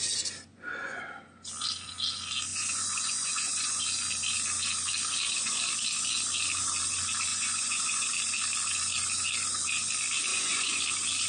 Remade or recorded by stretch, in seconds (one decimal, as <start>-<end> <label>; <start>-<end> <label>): 0.0-0.5 recorded; 0.5-1.0 remade; 1.0-2.5 recorded; 2.5-3.8 remade; 3.8-7.3 recorded; 7.3-8.1 remade; 8.1-10.3 recorded; 10.3-10.8 remade; 10.8-11.3 recorded